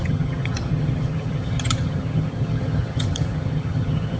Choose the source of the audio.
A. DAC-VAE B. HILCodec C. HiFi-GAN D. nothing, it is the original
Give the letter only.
C